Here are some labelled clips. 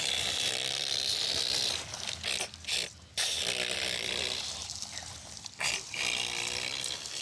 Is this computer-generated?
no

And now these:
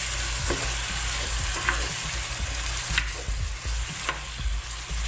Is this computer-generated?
no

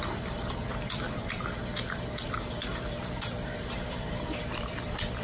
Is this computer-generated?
yes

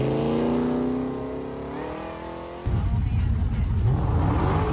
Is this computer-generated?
no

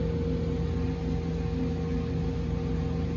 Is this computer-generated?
no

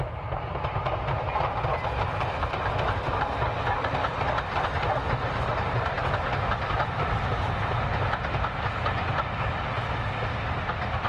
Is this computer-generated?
no